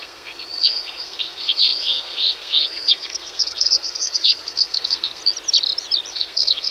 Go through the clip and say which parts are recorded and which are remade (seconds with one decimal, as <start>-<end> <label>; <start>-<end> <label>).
0.0-5.2 remade; 5.2-6.1 recorded; 6.1-6.7 remade